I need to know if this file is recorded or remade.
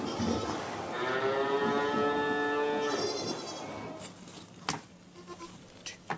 recorded